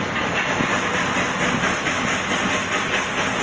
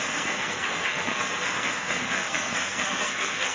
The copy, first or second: second